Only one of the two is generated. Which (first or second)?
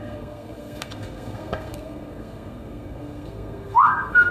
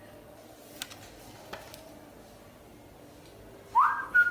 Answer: first